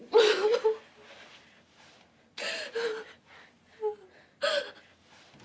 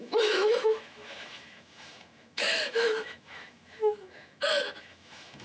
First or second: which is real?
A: first